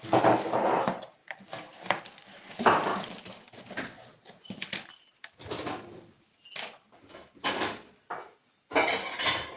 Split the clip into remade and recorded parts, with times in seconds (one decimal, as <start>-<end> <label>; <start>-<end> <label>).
0.0-1.2 recorded; 1.2-2.5 remade; 2.5-9.6 recorded